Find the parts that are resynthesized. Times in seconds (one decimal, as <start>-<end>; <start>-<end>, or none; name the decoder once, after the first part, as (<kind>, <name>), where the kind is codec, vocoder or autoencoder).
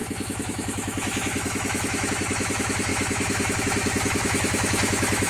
0.0-5.3 (autoencoder, DAC-VAE)